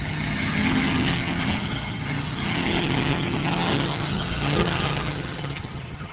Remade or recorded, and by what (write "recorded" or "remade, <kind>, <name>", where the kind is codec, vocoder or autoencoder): remade, vocoder, HiFi-GAN